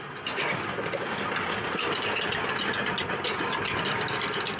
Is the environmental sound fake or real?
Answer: real